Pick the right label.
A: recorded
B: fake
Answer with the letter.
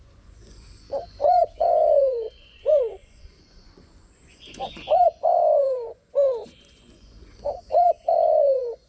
B